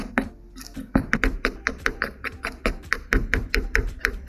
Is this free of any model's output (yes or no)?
yes